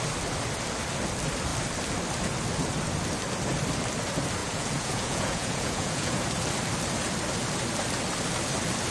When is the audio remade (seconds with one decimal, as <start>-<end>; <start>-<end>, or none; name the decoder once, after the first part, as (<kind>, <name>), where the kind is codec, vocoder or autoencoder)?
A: 4.4-6.1 (vocoder, Vocos)